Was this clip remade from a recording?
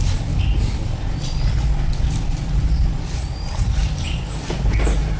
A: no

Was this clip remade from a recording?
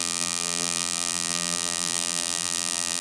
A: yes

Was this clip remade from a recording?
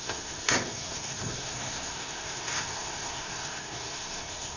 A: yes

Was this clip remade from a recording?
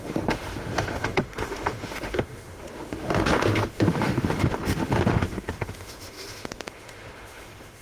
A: yes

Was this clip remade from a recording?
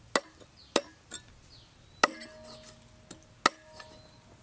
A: no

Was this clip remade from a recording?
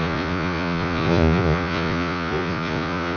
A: yes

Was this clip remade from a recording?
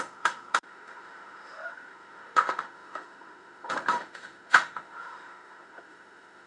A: yes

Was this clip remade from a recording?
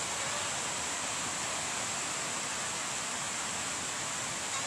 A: no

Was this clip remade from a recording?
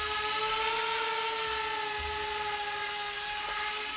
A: no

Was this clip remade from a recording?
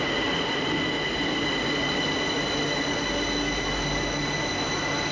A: no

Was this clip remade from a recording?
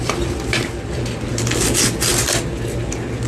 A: no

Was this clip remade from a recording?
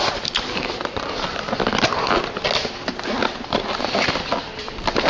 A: no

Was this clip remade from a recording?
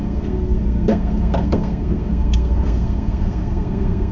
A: yes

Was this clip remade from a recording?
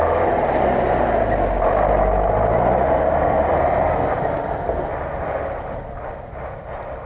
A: no